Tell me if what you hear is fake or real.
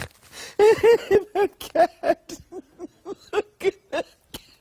real